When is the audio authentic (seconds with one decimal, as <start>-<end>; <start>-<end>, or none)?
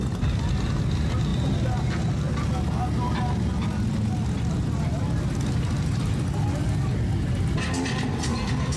0.0-8.8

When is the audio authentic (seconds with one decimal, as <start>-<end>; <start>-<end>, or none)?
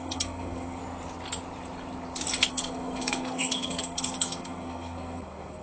0.8-2.5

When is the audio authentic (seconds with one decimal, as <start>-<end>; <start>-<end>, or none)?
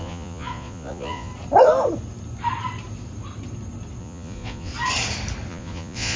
1.3-4.0; 4.7-5.5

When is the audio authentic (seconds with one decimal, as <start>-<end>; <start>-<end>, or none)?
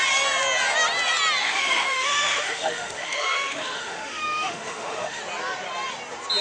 0.0-1.4; 5.2-6.4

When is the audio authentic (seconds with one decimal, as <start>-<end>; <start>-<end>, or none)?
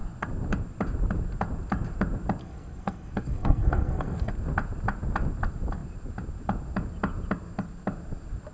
0.0-2.4; 4.3-8.5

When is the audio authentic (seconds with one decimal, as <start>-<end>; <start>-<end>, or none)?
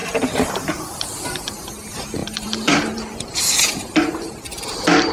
0.5-2.2; 4.4-5.1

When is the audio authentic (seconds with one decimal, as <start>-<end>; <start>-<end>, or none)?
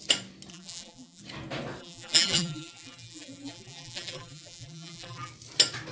0.0-0.5; 1.2-1.8; 5.3-5.9